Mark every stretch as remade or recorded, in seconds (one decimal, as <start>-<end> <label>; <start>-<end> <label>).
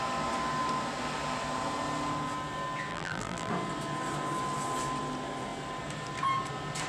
0.0-2.9 recorded; 2.9-3.5 remade; 3.5-6.9 recorded